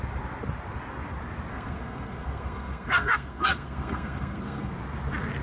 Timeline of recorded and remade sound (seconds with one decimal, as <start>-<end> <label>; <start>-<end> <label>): 0.0-1.5 recorded; 1.5-4.7 remade; 4.7-5.4 recorded